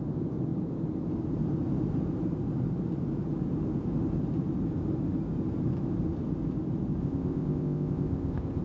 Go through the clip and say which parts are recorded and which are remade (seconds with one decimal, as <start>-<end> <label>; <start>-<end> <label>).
0.0-7.0 recorded; 7.0-8.6 remade